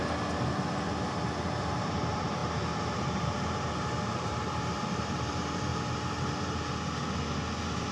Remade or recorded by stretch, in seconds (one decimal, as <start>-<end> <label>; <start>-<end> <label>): 0.0-1.6 recorded; 1.6-5.7 remade; 5.7-7.9 recorded